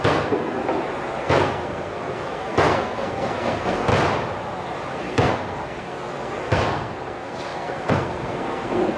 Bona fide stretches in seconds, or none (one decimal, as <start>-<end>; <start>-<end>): 0.6-1.2; 3.9-4.9